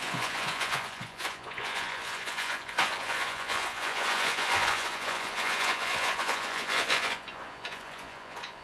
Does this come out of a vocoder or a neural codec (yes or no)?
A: yes